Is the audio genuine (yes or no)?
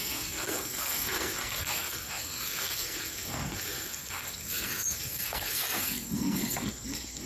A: no